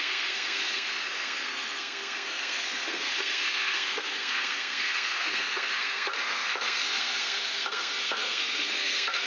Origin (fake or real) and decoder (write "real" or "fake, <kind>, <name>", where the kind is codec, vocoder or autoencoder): fake, codec, SNAC